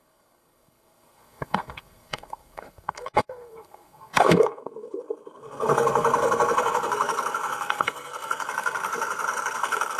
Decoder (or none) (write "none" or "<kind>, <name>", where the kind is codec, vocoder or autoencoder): codec, SNAC